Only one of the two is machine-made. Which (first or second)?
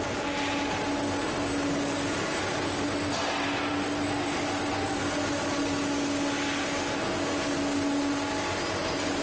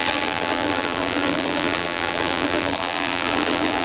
second